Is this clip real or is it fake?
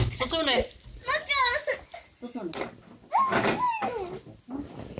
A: real